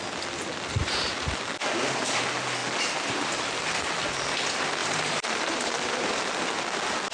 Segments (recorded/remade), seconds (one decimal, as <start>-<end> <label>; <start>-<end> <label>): 0.0-0.8 recorded; 0.8-1.4 remade; 1.4-4.8 recorded; 4.8-6.1 remade; 6.1-7.1 recorded